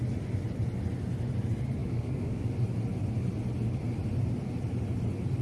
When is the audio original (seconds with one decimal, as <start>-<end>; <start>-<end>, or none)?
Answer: 0.0-1.8; 2.5-5.4